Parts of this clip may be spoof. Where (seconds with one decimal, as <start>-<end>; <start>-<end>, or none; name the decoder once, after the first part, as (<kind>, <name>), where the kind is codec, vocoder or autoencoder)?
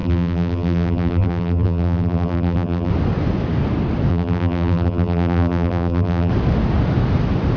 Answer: 0.0-2.9 (vocoder, BigVGAN v2); 4.1-6.3